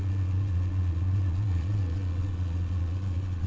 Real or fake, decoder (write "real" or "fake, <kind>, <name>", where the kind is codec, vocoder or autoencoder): fake, vocoder, Vocos